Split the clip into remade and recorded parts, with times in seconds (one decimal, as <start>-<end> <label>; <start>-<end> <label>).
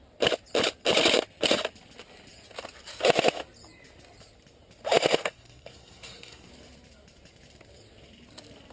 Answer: 0.0-5.2 recorded; 5.2-6.5 remade; 6.5-8.7 recorded